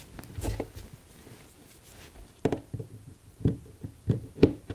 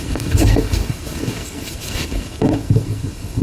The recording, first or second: first